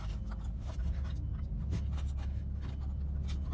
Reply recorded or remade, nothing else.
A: recorded